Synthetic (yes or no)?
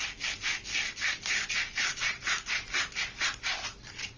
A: no